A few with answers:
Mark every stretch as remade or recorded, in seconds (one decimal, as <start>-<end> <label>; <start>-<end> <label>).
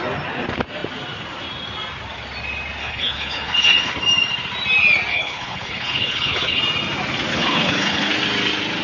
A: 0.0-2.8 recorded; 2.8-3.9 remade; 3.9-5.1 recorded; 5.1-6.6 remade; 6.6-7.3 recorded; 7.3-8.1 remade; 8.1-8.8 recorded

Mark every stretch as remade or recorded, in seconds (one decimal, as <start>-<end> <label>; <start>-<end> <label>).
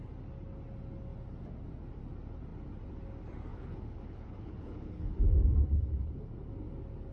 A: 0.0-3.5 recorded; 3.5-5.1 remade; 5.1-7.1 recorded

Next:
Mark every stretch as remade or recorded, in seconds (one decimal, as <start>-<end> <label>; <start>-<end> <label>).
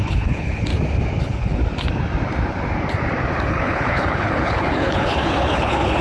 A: 0.0-0.7 remade; 0.7-1.2 recorded; 1.2-1.6 remade; 1.6-3.5 recorded; 3.5-6.0 remade